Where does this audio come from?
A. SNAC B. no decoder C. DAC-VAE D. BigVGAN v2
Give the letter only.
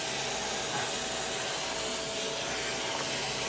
B